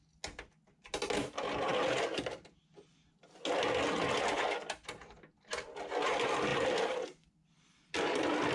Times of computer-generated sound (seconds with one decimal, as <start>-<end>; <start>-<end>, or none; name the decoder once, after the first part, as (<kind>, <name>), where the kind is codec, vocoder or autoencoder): 6.5-8.5 (vocoder, BigVGAN v2)